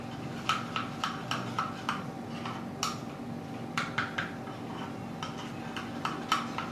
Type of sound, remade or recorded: recorded